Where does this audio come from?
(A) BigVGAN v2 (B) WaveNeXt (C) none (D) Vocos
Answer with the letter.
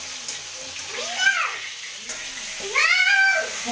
C